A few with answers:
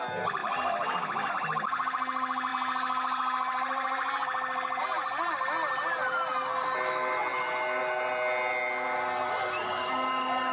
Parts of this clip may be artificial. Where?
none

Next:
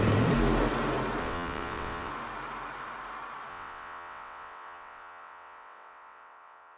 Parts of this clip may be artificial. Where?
1.2-2.1 (vocoder, WaveNeXt); 3.5-6.8

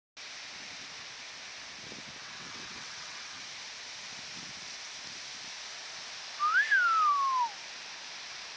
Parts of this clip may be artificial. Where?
2.2-3.4 (vocoder, WaveNeXt)

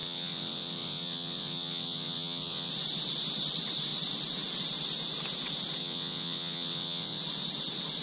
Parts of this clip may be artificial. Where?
0.0-2.7 (vocoder, WaveNeXt); 5.8-7.2

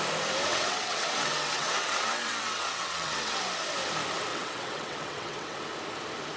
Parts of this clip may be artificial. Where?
0.5-3.4 (vocoder, WaveNeXt); 4.3-5.6